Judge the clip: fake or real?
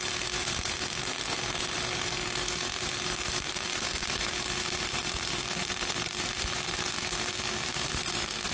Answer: real